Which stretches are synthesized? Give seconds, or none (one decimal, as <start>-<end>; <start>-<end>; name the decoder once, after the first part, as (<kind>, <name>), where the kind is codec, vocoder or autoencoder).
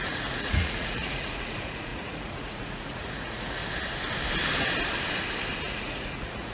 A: 0.0-3.6 (vocoder, Vocos); 5.7-6.5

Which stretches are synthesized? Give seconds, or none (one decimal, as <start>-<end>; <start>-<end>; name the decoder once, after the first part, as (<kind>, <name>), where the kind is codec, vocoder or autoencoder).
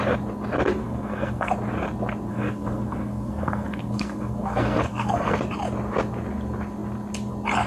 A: 0.8-1.5 (codec, SNAC); 2.3-5.4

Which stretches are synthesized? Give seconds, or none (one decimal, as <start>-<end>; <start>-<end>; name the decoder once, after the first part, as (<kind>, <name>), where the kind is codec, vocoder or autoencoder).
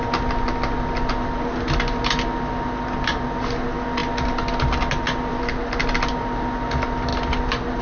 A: none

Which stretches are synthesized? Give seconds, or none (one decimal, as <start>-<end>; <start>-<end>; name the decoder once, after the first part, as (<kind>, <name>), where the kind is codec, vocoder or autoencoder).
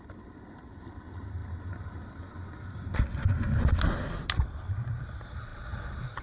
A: none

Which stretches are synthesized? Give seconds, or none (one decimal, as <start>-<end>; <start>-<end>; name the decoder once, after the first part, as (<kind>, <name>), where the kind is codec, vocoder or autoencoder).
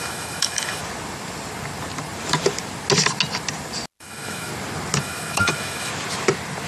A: 0.0-0.8 (autoencoder, DAC-VAE); 4.0-4.5; 5.0-5.9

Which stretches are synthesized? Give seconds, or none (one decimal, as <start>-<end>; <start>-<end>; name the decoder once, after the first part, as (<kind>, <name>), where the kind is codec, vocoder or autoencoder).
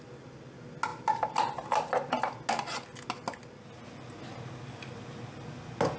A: none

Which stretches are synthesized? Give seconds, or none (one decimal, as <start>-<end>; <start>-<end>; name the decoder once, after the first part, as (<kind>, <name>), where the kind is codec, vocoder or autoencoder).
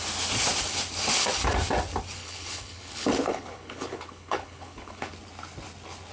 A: 2.2-5.1 (codec, HILCodec)